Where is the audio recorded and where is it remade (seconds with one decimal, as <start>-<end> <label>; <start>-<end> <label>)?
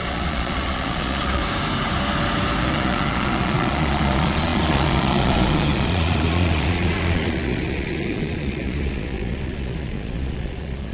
0.0-1.4 remade; 1.4-2.6 recorded; 2.6-10.9 remade